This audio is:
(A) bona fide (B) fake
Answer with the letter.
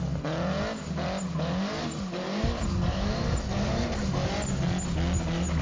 A